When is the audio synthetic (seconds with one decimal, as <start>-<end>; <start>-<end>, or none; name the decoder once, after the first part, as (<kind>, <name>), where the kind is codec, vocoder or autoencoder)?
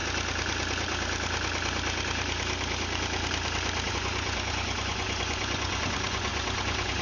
3.9-7.0 (vocoder, Vocos)